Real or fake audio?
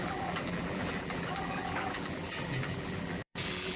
fake